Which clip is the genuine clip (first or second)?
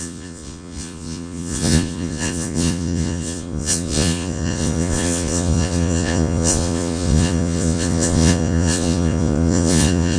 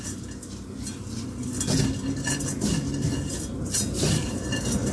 second